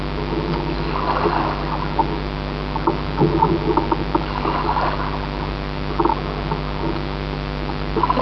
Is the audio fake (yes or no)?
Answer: no